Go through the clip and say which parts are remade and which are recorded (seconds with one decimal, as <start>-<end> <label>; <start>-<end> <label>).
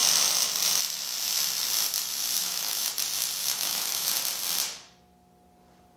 0.0-2.4 recorded; 2.4-2.9 remade; 2.9-3.4 recorded; 3.4-4.1 remade; 4.1-6.0 recorded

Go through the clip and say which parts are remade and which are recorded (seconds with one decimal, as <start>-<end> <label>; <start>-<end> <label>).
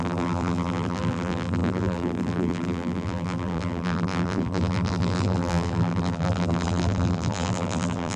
0.0-8.2 remade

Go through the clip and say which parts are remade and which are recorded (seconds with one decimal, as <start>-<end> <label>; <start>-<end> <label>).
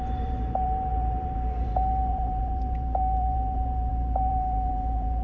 0.0-5.2 remade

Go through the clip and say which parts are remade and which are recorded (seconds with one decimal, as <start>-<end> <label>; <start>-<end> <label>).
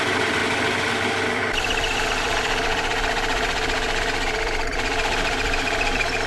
0.0-0.4 remade; 0.4-0.9 recorded; 0.9-6.3 remade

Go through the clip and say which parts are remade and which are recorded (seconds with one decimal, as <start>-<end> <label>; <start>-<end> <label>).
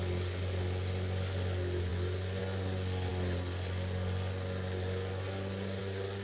0.0-6.2 recorded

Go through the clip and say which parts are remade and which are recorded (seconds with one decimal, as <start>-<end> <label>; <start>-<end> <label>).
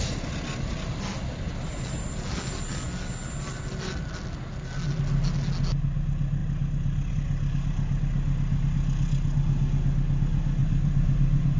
0.0-10.6 recorded; 10.6-11.6 remade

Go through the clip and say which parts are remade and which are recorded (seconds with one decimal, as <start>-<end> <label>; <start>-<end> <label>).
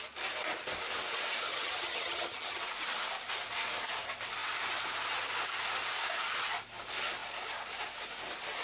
0.0-1.5 recorded; 1.5-2.6 remade; 2.6-8.6 recorded